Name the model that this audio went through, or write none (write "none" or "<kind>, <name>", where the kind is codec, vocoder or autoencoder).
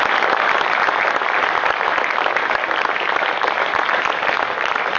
none